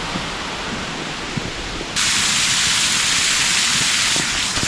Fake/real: real